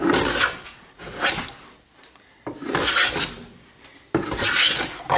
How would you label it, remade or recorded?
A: recorded